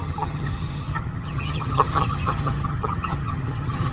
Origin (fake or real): fake